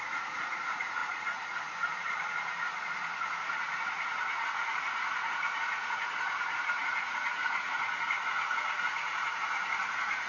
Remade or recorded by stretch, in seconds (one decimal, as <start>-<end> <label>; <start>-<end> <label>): 0.0-10.3 remade